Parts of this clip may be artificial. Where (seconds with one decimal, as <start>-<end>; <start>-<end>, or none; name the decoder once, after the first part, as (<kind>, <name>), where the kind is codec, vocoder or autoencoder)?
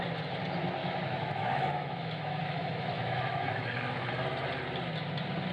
0.8-4.1 (autoencoder, DAC-VAE)